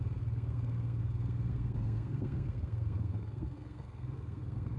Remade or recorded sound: remade